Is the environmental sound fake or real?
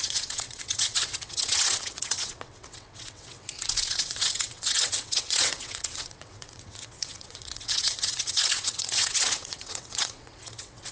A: fake